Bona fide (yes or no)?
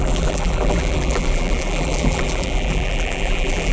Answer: no